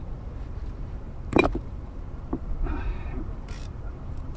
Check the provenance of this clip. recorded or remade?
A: remade